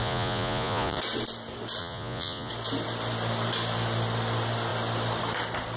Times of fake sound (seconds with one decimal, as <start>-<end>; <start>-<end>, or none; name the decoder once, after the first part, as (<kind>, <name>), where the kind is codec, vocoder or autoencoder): 0.0-1.0 (vocoder, Vocos); 1.8-2.5